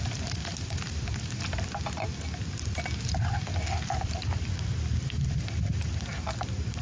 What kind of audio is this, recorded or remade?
recorded